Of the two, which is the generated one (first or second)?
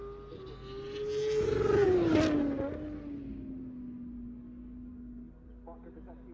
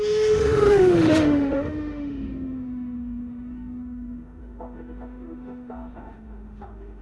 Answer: second